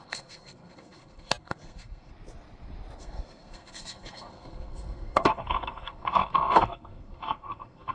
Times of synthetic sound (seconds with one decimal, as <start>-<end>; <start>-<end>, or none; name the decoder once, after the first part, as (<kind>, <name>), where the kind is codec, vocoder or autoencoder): 0.0-2.1 (codec, SNAC); 3.0-7.9